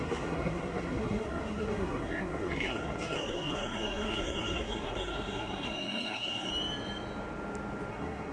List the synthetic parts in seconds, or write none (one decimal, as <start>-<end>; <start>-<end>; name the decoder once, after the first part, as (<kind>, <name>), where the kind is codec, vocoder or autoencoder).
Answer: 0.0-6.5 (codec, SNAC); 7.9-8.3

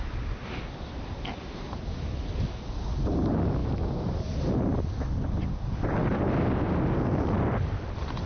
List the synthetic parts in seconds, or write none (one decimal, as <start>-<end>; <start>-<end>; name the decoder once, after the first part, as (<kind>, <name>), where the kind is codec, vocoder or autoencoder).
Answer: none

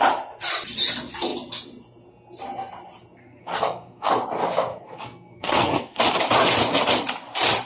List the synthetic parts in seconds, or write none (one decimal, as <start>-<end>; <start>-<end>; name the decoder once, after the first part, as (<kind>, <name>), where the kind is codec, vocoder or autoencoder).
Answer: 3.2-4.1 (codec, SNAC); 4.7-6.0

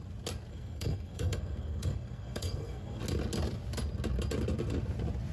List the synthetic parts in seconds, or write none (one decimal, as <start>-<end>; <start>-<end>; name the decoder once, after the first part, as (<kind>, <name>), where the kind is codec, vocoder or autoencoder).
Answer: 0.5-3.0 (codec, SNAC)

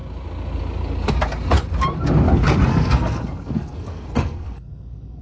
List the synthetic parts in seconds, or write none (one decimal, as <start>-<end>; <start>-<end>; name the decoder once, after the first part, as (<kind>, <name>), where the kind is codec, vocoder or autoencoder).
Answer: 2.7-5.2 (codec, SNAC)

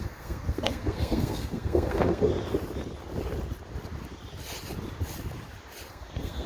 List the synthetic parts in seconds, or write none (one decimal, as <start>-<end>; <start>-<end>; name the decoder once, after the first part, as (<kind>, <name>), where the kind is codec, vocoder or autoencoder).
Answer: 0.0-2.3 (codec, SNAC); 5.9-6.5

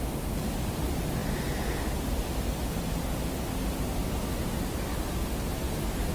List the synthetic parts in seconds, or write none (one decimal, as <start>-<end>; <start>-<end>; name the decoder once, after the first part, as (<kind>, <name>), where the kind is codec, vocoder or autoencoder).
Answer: none

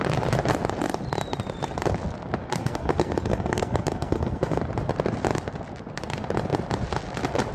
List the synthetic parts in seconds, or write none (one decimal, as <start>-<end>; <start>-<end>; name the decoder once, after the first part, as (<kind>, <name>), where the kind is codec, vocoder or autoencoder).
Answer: 2.6-4.6 (codec, SNAC)